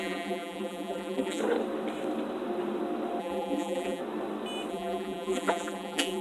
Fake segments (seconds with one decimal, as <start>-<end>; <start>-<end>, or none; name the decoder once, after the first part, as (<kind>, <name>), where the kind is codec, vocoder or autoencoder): 0.0-1.4 (vocoder, BigVGAN v2); 3.2-4.0; 4.7-6.2